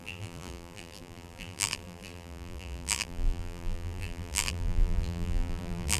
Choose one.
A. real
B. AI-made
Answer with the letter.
B